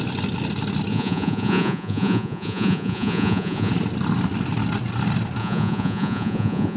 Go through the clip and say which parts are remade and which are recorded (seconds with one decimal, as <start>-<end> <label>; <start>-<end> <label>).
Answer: 0.0-0.9 recorded; 0.9-3.7 remade; 3.7-5.4 recorded; 5.4-6.8 remade